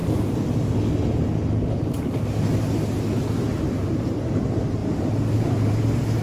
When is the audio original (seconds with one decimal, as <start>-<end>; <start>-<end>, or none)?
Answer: 0.0-3.5; 4.3-4.8; 5.7-6.2